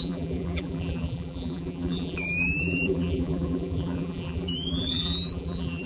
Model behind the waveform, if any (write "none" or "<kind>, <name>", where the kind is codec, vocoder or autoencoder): vocoder, BigVGAN v2